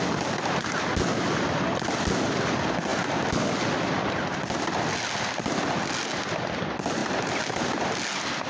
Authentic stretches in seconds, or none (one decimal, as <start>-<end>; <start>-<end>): 0.0-8.5